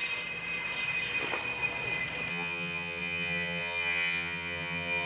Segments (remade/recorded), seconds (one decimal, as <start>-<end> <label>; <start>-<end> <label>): 0.0-2.3 recorded; 2.3-5.1 remade